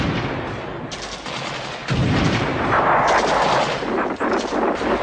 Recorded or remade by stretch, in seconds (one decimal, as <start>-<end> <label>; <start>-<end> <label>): 0.0-1.8 recorded; 1.8-2.8 remade; 2.8-5.0 recorded